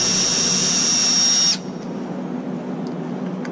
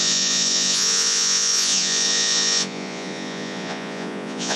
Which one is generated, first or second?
second